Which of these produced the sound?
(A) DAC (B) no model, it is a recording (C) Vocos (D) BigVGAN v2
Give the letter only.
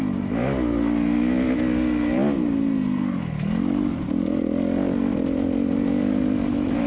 B